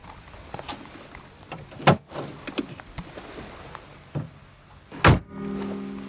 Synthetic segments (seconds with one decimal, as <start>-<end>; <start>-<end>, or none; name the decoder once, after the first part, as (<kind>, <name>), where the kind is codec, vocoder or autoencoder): 0.0-3.5 (vocoder, BigVGAN v2)